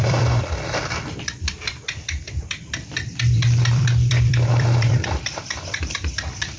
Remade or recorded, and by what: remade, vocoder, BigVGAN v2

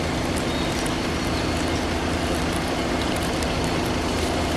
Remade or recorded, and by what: recorded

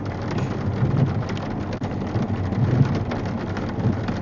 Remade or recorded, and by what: recorded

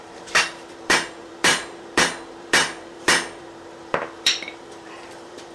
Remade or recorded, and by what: remade, vocoder, BigVGAN v2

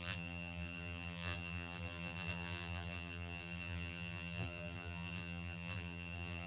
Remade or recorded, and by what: remade, vocoder, BigVGAN v2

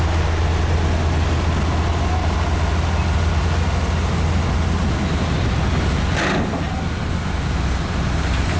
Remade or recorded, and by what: recorded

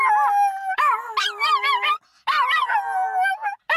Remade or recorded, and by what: recorded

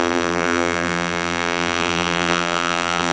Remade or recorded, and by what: remade, vocoder, BigVGAN v2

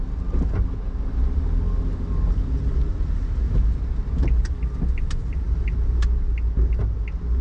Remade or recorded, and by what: recorded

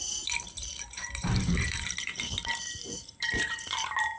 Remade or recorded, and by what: remade, vocoder, BigVGAN v2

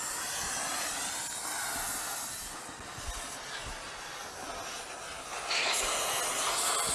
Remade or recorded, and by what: recorded